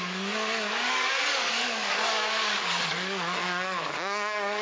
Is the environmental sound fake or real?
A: fake